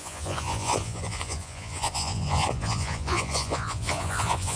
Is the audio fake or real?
fake